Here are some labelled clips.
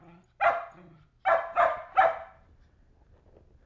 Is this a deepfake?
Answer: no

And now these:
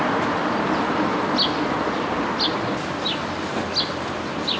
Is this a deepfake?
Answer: no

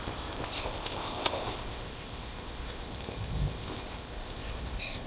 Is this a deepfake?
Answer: yes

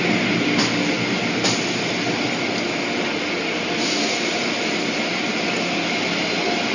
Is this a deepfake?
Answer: no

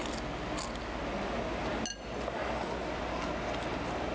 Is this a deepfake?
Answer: no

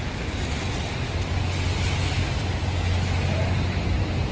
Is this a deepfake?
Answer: no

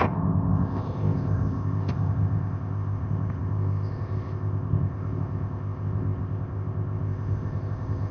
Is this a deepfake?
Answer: yes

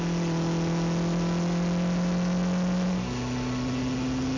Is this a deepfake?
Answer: no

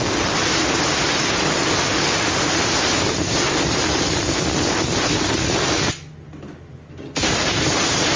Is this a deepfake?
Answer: no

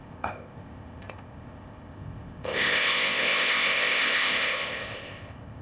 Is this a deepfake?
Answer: yes